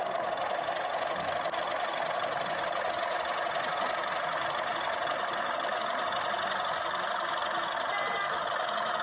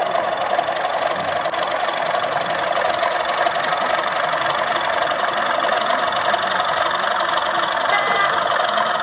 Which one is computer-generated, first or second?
second